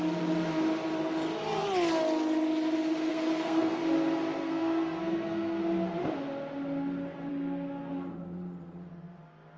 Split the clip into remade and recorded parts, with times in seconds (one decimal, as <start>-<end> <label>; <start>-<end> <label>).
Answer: 0.0-3.1 recorded; 3.1-3.8 remade; 3.8-4.4 recorded; 4.4-5.6 remade; 5.6-7.3 recorded; 7.3-7.9 remade; 7.9-9.6 recorded